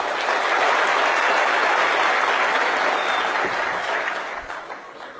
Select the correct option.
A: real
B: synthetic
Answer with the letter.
A